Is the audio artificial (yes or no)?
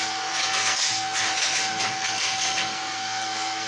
yes